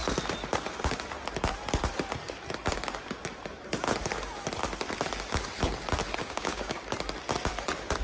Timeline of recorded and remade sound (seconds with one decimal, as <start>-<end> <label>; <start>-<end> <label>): 0.0-6.2 recorded; 6.2-6.8 remade; 6.8-8.0 recorded